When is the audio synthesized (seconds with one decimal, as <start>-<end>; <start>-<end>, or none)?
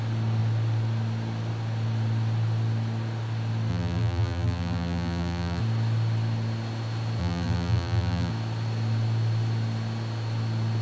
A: 3.7-5.6; 7.2-8.3